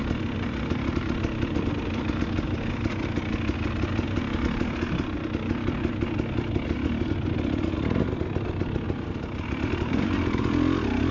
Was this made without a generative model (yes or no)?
yes